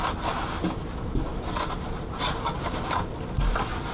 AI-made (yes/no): no